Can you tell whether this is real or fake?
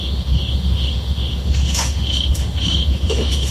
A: fake